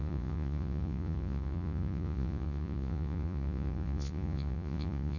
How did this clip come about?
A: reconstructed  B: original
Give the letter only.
A